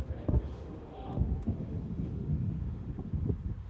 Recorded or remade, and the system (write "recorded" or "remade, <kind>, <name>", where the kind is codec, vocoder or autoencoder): remade, autoencoder, DAC-VAE